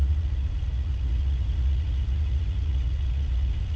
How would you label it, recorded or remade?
remade